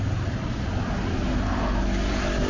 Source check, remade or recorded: recorded